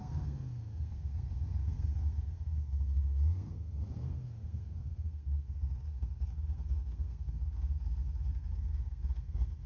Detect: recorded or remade remade